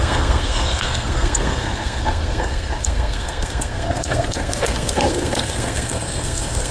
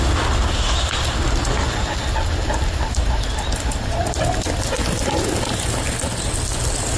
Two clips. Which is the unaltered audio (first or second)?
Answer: second